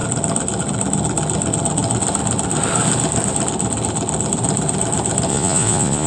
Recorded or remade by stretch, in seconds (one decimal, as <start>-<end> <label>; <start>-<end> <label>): 0.0-5.3 recorded; 5.3-6.1 remade